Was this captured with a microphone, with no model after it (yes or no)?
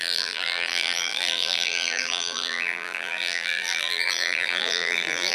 no